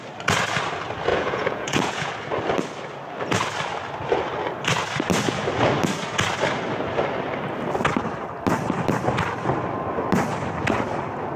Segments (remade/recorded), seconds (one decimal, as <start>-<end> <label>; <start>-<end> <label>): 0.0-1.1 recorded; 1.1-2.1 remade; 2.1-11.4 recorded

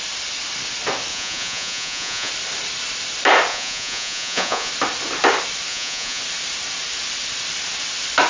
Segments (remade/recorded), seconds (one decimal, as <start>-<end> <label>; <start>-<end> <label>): 0.0-1.1 recorded; 1.1-2.3 remade; 2.3-3.5 recorded; 3.5-4.7 remade; 4.7-5.7 recorded; 5.7-6.2 remade; 6.2-8.3 recorded

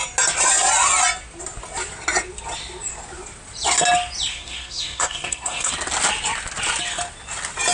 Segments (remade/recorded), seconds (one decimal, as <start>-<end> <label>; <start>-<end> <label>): 0.0-4.3 recorded; 4.3-5.7 remade; 5.7-7.7 recorded

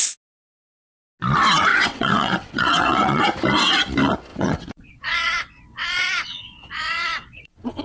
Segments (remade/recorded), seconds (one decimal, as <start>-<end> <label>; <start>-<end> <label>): 0.0-1.7 recorded; 1.7-3.2 remade; 3.2-4.3 recorded; 4.3-7.8 remade

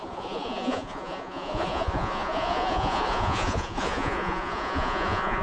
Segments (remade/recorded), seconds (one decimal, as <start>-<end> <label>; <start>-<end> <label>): 0.0-5.4 remade